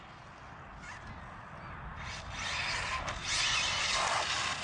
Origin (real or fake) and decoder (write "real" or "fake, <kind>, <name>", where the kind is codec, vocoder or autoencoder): real